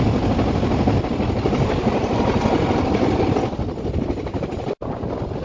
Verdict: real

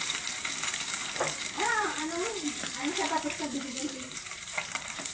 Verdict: fake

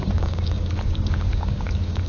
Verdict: fake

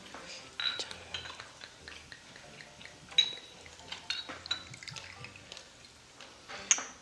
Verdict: real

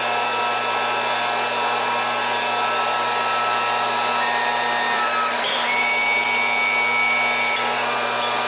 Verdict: real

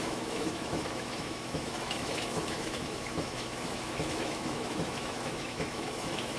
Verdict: fake